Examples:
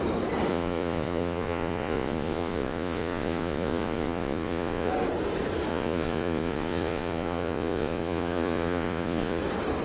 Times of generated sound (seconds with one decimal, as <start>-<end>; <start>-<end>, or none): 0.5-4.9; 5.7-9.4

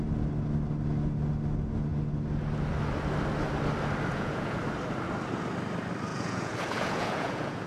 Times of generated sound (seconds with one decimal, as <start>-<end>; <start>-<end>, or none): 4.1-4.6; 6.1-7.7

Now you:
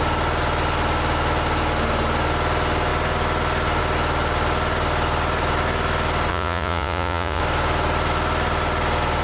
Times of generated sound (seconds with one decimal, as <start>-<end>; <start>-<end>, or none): 6.3-7.4

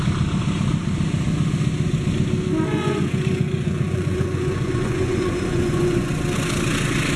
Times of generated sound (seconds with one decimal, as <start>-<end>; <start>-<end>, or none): 2.7-6.1